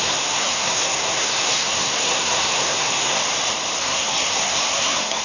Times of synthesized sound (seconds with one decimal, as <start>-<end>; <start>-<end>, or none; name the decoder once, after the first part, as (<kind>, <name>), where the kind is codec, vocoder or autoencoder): 0.0-3.2 (codec, SNAC); 3.8-5.2